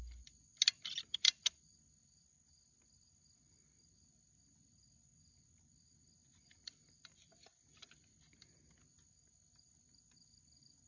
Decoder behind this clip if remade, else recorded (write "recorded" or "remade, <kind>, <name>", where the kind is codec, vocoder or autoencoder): recorded